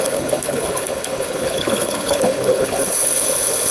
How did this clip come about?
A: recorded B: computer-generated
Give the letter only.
B